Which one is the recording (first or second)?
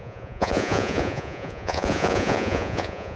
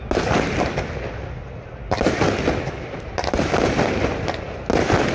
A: second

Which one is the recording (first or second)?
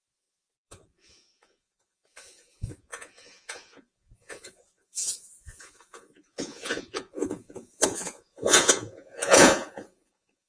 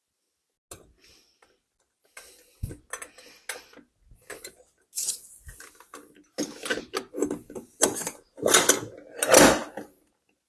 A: second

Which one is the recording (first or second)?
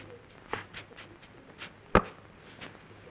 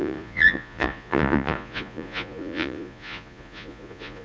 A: first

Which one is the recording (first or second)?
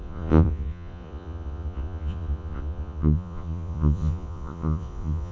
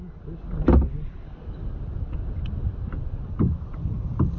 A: second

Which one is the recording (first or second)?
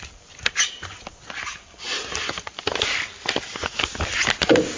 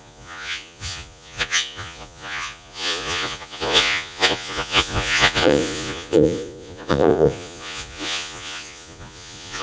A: first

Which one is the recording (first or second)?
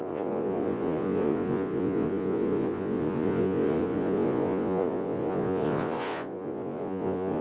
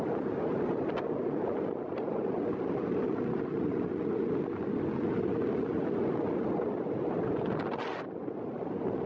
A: second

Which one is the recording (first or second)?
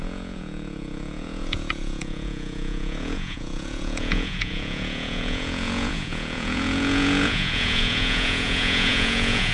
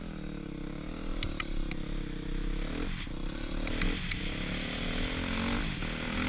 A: second